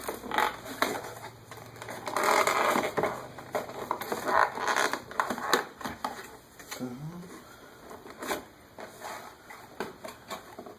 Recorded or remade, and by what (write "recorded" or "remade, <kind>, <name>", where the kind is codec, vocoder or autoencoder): recorded